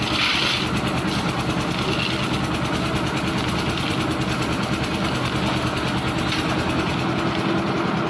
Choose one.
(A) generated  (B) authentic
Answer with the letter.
B